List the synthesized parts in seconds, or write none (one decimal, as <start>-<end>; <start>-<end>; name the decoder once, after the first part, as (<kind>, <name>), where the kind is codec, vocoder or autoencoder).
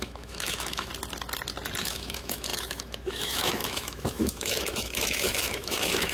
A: 0.0-0.9 (autoencoder, DAC-VAE); 1.8-6.1